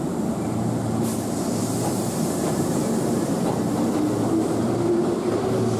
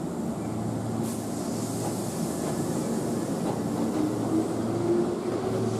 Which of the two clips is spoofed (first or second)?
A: first